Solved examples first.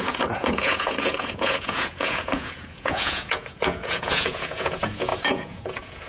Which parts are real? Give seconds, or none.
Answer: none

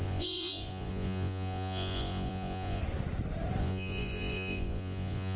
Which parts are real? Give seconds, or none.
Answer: 2.8-3.6

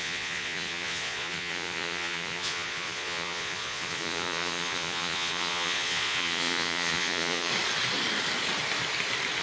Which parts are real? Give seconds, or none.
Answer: 7.5-9.4

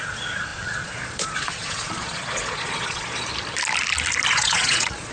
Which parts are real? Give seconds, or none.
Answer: 3.3-4.3

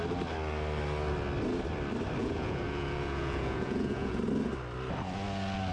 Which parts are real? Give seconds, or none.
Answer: 0.0-2.2; 4.2-5.7

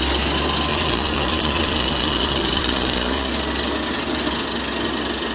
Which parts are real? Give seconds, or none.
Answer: 0.0-0.7; 3.3-5.3

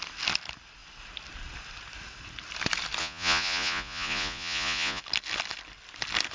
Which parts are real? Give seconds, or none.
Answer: 0.0-3.0; 5.0-6.3

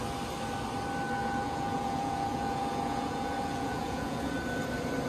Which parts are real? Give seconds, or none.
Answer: 0.0-1.2; 4.3-5.1